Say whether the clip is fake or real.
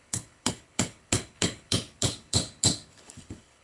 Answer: fake